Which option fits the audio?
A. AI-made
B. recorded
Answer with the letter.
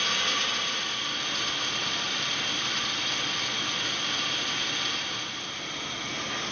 B